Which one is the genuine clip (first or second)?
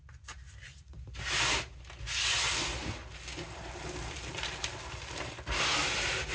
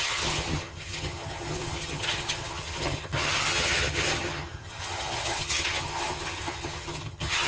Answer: first